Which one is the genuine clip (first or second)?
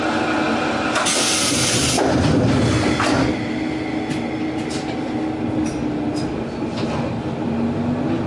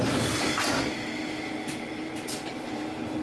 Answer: first